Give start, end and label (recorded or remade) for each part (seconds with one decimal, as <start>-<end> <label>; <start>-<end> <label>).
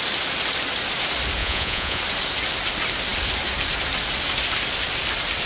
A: 0.0-1.4 recorded; 1.4-2.0 remade; 2.0-5.5 recorded